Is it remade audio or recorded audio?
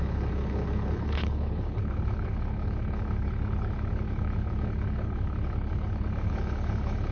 remade